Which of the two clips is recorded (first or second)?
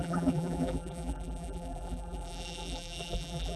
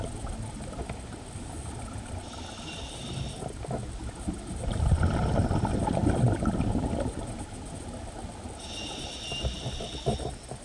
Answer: second